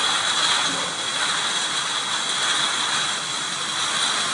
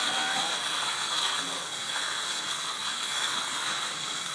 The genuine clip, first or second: first